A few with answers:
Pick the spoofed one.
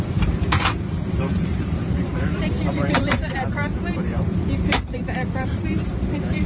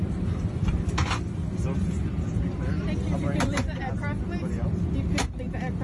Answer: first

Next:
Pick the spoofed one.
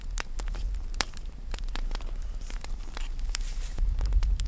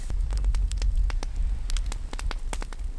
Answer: first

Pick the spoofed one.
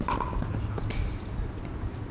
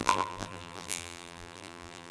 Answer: second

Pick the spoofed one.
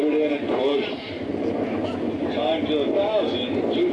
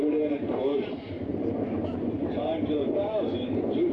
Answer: second